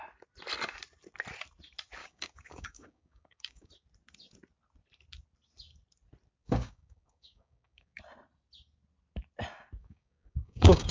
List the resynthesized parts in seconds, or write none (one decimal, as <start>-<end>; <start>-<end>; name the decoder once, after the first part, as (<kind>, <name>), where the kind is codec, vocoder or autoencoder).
2.0-3.7 (codec, DAC); 6.4-8.0; 9.8-10.9